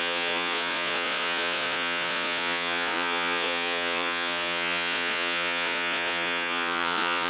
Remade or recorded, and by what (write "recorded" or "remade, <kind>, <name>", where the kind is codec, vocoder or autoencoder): remade, vocoder, Vocos